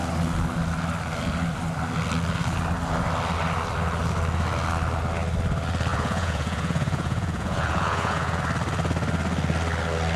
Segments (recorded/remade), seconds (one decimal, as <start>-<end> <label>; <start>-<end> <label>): 0.0-5.9 recorded; 5.9-8.4 remade; 8.4-10.2 recorded